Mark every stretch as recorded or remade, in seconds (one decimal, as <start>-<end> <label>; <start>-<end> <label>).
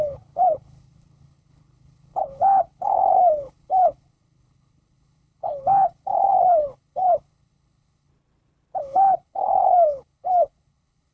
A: 0.0-8.1 remade; 8.1-8.8 recorded; 8.8-11.1 remade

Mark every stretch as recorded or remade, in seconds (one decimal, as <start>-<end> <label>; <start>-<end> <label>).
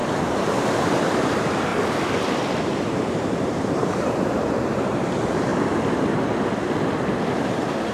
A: 0.0-1.7 remade; 1.7-2.6 recorded; 2.6-5.5 remade; 5.5-7.3 recorded; 7.3-7.9 remade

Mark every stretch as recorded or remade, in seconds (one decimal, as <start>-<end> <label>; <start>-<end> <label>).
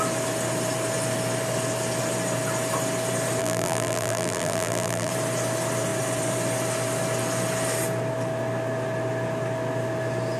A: 0.0-3.4 recorded; 3.4-5.1 remade; 5.1-10.4 recorded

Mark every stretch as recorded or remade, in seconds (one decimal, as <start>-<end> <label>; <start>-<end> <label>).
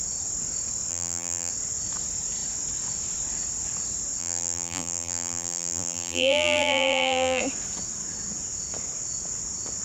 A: 0.0-0.9 recorded; 0.9-1.5 remade; 1.5-4.2 recorded; 4.2-7.4 remade; 7.4-9.8 recorded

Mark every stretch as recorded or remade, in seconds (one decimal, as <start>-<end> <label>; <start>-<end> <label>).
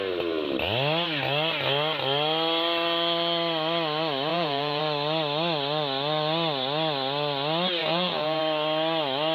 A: 0.0-4.3 recorded; 4.3-4.8 remade; 4.8-7.8 recorded; 7.8-8.4 remade; 8.4-9.3 recorded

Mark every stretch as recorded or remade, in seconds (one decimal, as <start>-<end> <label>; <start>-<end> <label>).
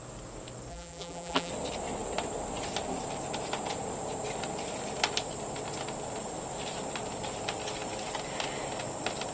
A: 0.0-0.7 recorded; 0.7-1.5 remade; 1.5-9.3 recorded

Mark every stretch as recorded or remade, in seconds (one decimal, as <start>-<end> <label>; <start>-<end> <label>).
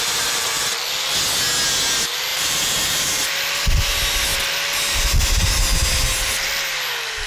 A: 0.0-2.3 recorded; 2.3-3.3 remade; 3.3-7.3 recorded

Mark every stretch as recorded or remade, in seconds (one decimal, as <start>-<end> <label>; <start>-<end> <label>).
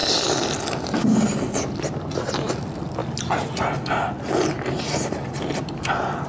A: 0.0-6.3 recorded